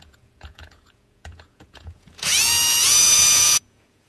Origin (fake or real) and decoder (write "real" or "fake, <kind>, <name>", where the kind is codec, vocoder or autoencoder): fake, vocoder, Vocos